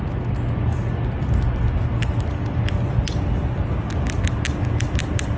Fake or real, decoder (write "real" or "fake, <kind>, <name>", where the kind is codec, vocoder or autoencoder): real